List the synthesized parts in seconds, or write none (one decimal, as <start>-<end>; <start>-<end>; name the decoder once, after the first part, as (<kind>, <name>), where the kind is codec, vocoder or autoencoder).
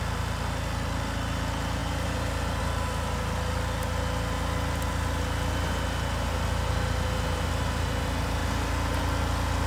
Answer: none